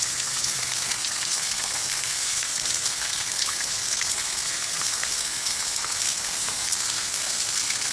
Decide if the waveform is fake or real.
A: fake